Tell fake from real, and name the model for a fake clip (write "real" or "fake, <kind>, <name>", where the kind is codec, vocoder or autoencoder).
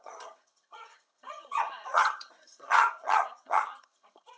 fake, vocoder, HiFi-GAN